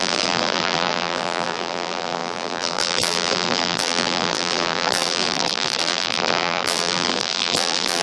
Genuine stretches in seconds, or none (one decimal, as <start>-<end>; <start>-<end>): none

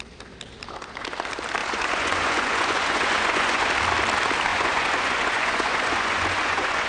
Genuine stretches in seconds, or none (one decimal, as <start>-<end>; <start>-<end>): 0.0-1.6; 3.7-4.5

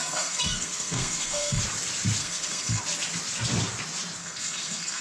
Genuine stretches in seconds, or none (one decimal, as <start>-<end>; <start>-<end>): 1.6-2.2; 2.8-4.2

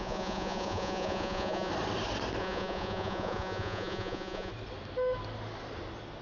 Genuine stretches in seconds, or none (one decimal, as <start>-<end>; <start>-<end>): 1.7-2.4; 4.5-6.2

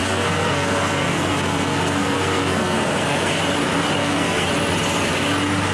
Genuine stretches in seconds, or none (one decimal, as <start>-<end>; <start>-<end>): 3.4-4.0; 4.5-5.7

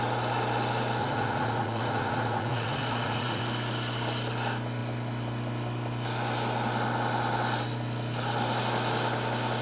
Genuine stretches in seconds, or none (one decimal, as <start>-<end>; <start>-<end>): 0.0-1.0; 3.4-9.6

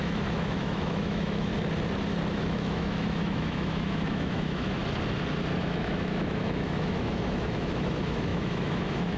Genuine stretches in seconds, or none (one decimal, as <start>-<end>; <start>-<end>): 1.5-2.3; 4.8-5.6